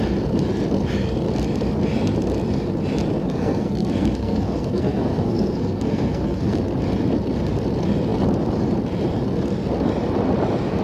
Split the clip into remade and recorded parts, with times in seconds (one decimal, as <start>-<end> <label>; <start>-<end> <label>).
0.0-3.2 recorded; 3.2-6.6 remade; 6.6-10.8 recorded